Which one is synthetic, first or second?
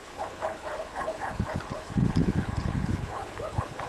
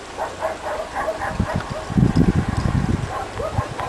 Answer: first